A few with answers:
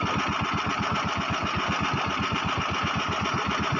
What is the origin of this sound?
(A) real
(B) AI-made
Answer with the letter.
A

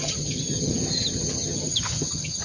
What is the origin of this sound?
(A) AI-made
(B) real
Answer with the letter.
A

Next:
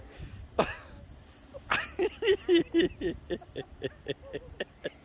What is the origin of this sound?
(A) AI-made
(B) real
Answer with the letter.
B